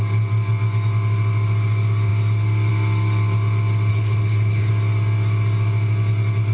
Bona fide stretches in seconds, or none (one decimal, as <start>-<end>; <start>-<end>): 0.0-3.9; 4.7-6.5